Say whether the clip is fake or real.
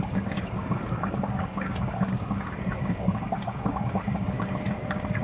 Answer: fake